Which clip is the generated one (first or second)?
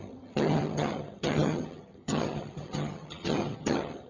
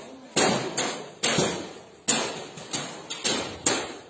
first